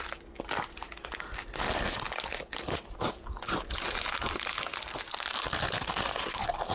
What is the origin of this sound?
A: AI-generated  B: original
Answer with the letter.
B